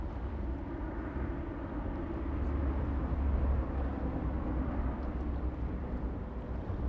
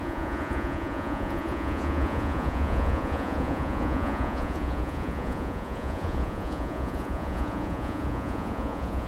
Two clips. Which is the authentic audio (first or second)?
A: first